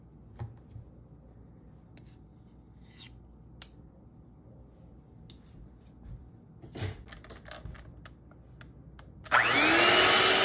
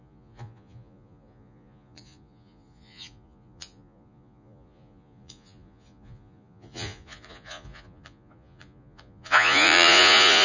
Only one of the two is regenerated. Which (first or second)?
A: second